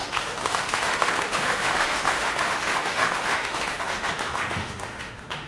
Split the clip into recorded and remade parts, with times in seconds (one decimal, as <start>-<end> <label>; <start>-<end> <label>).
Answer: 0.0-5.5 remade